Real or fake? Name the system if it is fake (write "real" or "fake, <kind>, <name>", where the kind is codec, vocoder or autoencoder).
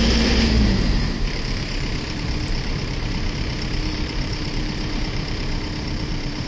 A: fake, vocoder, BigVGAN v2